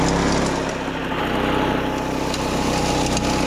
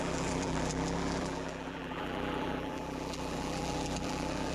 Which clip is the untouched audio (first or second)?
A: first